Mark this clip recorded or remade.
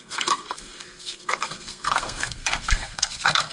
remade